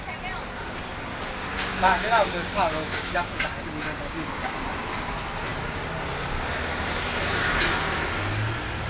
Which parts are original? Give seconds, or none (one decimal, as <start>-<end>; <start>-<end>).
0.0-1.1; 4.6-8.9